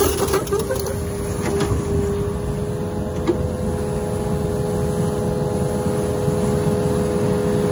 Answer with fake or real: real